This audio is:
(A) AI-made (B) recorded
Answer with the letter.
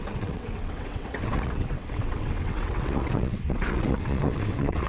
A